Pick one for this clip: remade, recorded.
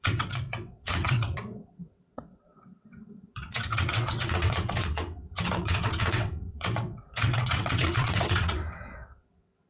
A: remade